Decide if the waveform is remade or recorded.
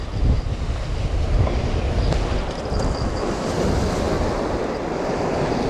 recorded